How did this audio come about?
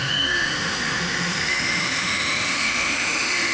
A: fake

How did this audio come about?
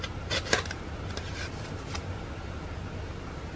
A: real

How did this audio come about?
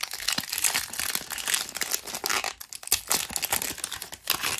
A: real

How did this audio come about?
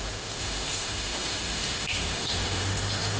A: fake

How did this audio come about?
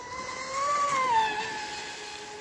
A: real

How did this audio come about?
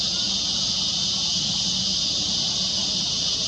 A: real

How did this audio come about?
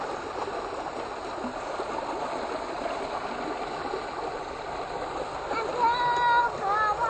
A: real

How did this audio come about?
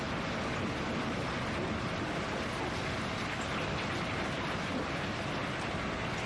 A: real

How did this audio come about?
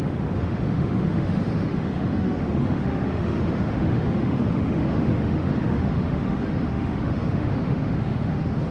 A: fake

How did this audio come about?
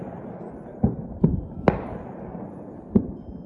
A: real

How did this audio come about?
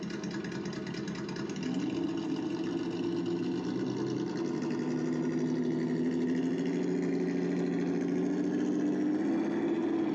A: real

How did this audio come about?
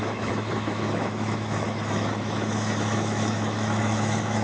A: fake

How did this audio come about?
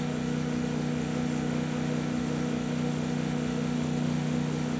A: fake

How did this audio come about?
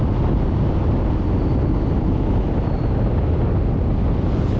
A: real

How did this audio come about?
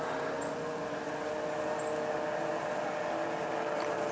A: real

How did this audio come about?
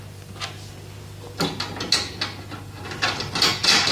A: real